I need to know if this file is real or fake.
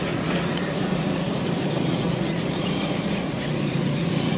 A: fake